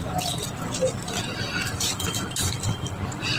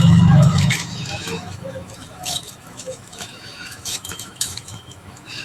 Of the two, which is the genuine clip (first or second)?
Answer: first